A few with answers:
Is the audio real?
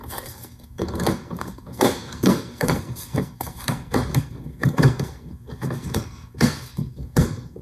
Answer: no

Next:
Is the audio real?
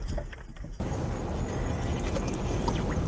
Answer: yes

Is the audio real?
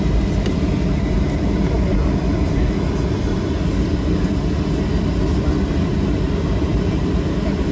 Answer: yes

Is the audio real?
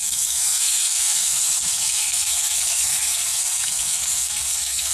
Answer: no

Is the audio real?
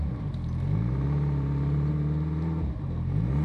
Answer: yes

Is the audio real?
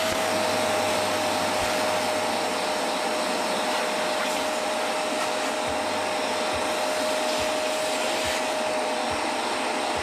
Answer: yes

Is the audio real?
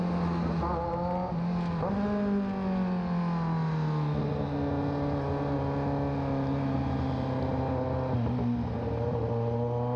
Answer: yes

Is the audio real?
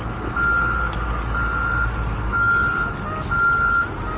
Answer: yes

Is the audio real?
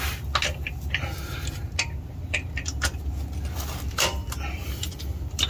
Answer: yes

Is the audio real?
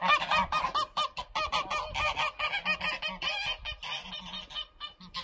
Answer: yes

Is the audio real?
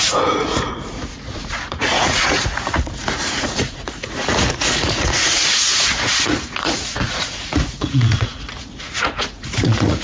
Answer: no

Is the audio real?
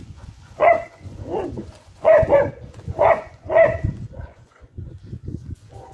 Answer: no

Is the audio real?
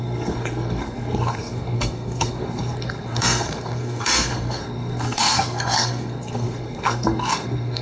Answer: no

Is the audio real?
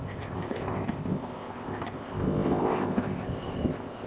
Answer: no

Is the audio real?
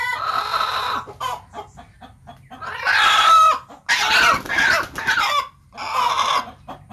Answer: yes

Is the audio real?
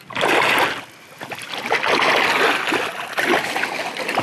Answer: yes